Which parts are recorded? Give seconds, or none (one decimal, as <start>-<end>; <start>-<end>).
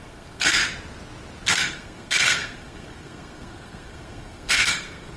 0.6-1.5